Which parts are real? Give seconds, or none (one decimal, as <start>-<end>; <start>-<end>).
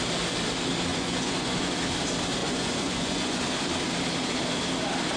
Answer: 0.0-0.9; 1.7-2.4; 3.4-5.2